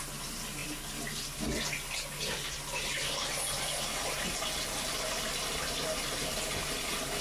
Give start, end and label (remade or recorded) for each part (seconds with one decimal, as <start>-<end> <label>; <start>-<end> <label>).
0.0-7.2 recorded